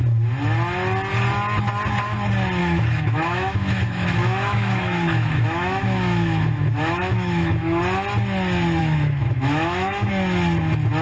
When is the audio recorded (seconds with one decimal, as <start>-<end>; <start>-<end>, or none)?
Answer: 0.0-2.6; 7.8-8.8; 10.1-11.0